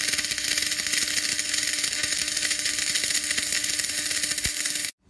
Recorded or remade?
recorded